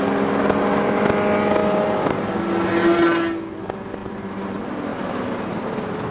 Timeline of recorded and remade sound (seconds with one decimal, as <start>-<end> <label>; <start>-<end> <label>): 0.0-4.0 recorded; 4.0-4.5 remade; 4.5-4.9 recorded; 4.9-5.4 remade; 5.4-6.1 recorded

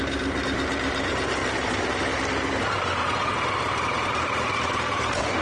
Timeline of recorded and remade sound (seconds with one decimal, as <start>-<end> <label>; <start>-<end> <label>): 0.0-1.4 remade; 1.4-2.6 recorded; 2.6-3.0 remade; 3.0-3.6 recorded; 3.6-5.4 remade

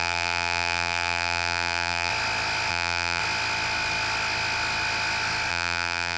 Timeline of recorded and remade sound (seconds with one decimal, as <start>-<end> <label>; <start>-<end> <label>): 0.0-2.1 remade; 2.1-2.7 recorded; 2.7-3.2 remade; 3.2-5.5 recorded; 5.5-6.2 remade

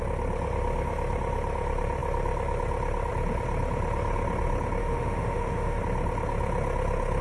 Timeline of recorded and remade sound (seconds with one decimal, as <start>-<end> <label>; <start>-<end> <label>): 0.0-4.8 recorded; 4.8-5.8 remade; 5.8-7.2 recorded

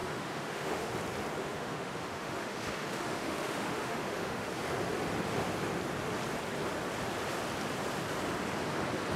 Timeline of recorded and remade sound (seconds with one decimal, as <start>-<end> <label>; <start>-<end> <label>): 0.0-0.9 remade; 0.9-1.4 recorded; 1.4-4.5 remade; 4.5-9.2 recorded

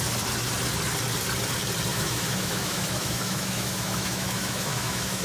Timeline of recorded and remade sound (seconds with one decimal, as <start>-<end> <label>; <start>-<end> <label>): 0.0-1.9 recorded; 1.9-5.2 remade